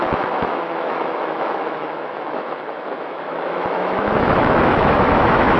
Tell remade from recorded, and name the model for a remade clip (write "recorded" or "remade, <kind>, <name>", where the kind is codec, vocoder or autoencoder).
remade, autoencoder, DAC-VAE